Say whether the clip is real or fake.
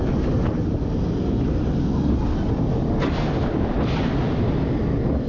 real